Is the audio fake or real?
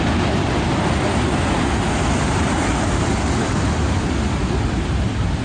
real